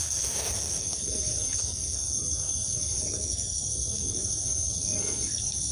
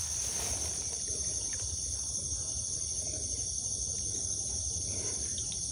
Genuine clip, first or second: second